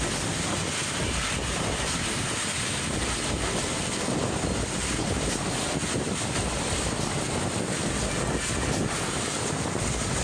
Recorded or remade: recorded